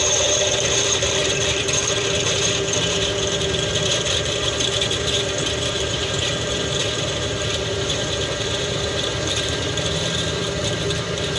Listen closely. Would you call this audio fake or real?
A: fake